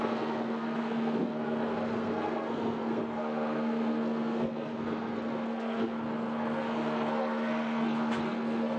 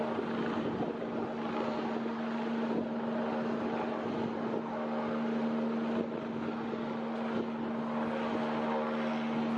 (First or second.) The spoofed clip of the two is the first